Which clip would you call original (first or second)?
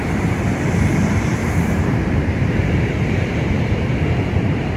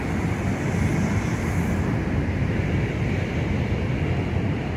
second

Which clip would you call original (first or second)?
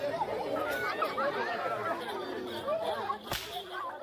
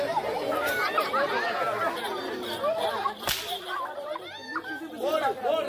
second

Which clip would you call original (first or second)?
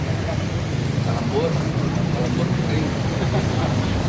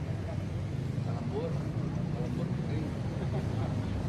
second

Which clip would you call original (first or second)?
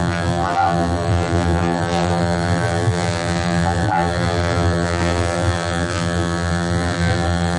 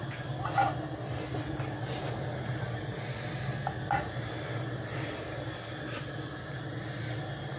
second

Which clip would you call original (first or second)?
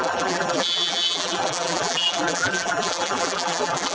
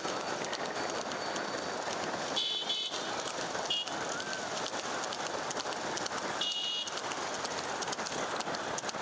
second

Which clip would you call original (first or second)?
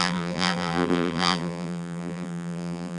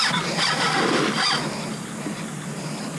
second